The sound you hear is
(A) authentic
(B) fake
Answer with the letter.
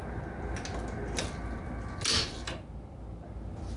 A